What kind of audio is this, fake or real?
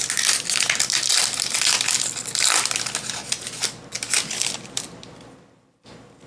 real